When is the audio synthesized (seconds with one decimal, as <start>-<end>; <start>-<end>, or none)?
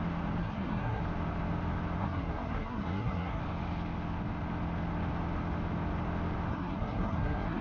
0.4-1.0; 2.0-3.4; 6.5-7.6